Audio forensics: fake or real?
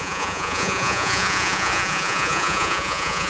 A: fake